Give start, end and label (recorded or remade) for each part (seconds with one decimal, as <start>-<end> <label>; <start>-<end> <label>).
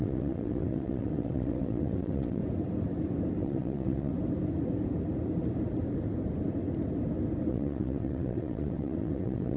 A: 0.0-2.4 remade; 2.4-3.4 recorded; 3.4-4.1 remade; 4.1-7.5 recorded; 7.5-9.6 remade